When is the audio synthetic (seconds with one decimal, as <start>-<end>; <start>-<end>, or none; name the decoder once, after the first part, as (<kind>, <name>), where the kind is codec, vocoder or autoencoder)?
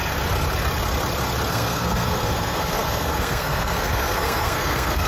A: 1.5-5.1 (codec, SNAC)